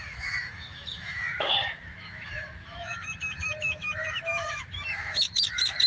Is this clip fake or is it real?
fake